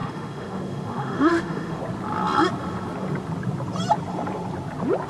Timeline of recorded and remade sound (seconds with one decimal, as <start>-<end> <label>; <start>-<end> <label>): 0.0-1.8 remade; 1.8-5.1 recorded